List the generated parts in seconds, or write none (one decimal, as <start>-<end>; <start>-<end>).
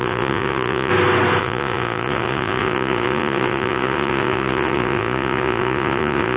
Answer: 0.0-0.9; 1.4-6.4